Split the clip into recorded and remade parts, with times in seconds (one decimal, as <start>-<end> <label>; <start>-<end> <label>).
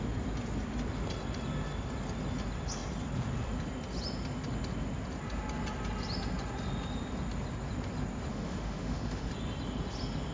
0.0-8.3 recorded; 8.3-9.3 remade; 9.3-10.3 recorded